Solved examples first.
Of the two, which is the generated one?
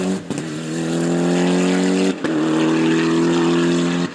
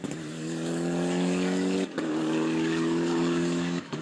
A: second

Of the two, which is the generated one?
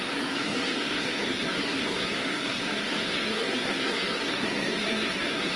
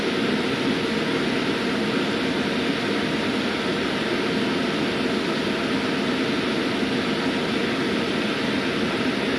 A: first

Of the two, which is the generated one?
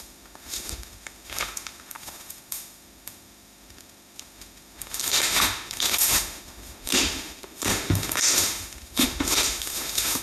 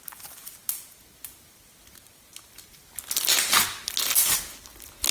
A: first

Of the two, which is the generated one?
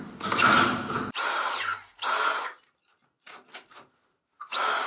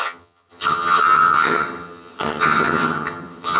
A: second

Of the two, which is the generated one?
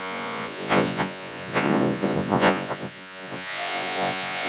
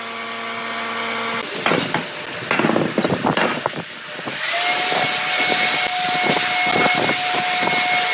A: first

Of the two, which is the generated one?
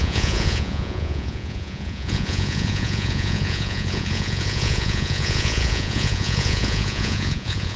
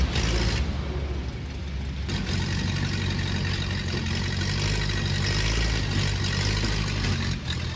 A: first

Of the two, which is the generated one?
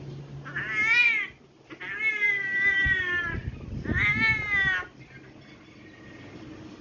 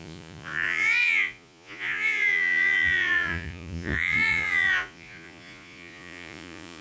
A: second